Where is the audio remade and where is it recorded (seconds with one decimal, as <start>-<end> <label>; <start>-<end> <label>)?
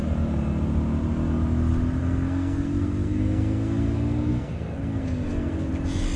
0.0-2.0 recorded; 2.0-5.7 remade; 5.7-6.2 recorded